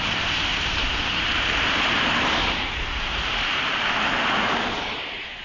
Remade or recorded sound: remade